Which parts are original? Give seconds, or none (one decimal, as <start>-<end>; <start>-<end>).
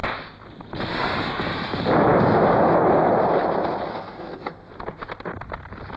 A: 0.0-3.9; 4.7-6.0